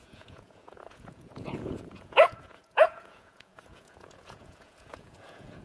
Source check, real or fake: fake